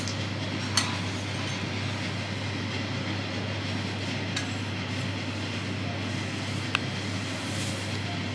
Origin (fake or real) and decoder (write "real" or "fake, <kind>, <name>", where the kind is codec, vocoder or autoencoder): real